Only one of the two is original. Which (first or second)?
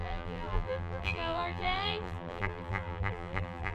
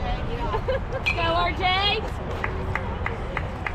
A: second